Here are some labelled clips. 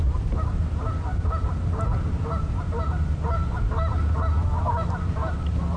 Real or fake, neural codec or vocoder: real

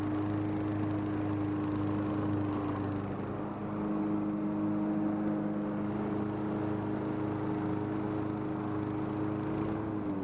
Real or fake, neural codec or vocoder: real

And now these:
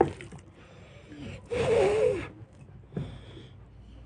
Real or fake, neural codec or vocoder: real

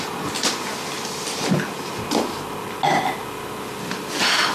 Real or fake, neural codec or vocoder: real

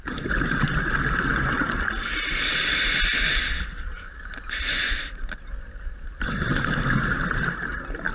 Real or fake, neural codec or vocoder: real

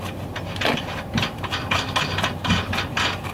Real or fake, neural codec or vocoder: real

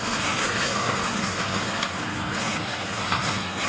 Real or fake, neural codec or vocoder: fake, codec, SNAC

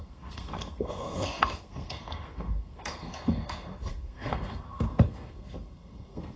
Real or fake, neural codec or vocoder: fake, codec, SNAC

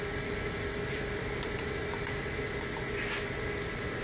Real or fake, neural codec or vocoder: real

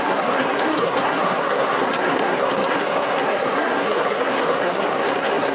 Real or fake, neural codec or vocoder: fake, codec, SNAC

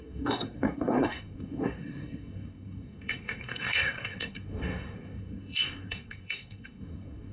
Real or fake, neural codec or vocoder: fake, codec, SNAC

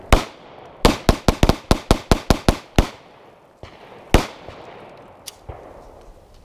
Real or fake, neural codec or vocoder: real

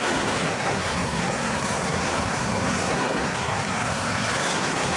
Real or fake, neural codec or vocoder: fake, codec, SNAC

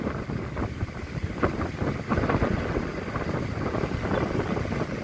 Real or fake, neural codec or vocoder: real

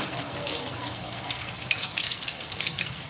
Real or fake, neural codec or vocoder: fake, codec, SNAC